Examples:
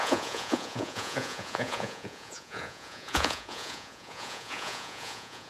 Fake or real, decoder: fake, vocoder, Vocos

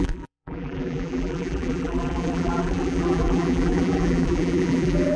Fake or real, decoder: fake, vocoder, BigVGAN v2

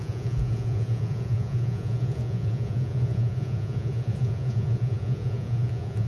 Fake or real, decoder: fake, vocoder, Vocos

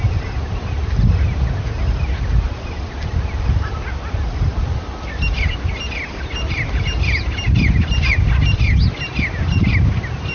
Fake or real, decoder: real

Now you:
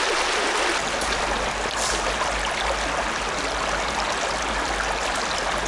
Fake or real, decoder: real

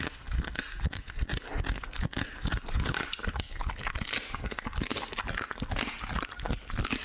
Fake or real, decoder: real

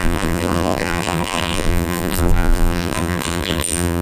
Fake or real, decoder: fake, vocoder, BigVGAN v2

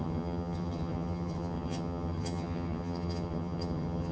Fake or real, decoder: fake, vocoder, HiFi-GAN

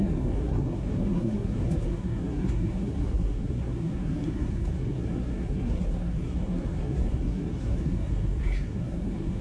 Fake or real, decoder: fake, codec, SNAC